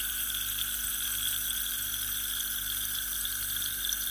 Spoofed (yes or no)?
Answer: no